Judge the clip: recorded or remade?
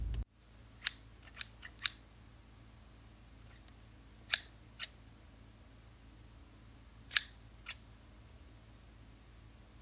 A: recorded